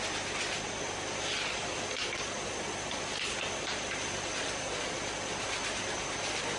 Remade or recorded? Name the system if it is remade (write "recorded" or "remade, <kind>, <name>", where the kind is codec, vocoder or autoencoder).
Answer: recorded